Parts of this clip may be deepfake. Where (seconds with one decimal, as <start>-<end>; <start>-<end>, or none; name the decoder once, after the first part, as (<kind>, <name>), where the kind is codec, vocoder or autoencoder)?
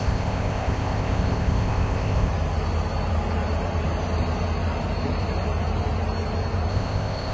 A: 0.0-2.3 (codec, ZipCodec); 6.7-7.3